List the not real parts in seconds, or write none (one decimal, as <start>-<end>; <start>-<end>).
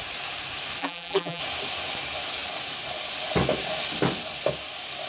0.8-1.4